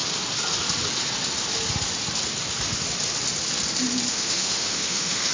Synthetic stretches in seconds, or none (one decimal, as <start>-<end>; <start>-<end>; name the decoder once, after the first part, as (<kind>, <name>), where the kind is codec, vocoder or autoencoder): 4.1-5.3 (autoencoder, DAC-VAE)